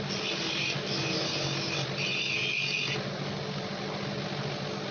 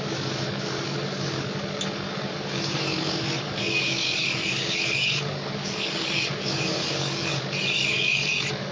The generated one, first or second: second